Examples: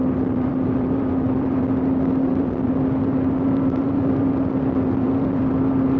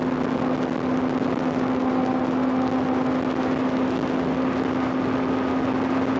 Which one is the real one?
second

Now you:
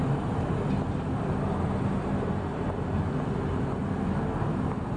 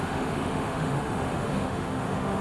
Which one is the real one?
first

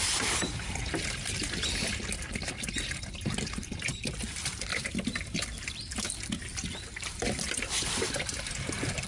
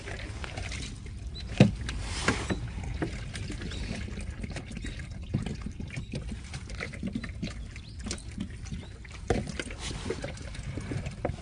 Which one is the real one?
second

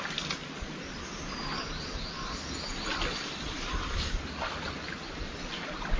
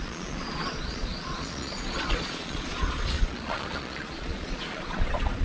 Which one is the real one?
first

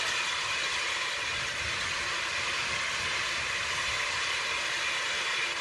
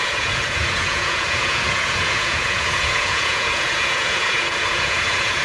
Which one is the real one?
first